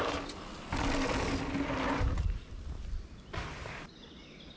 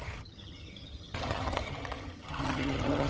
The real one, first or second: first